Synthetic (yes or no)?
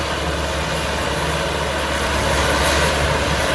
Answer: no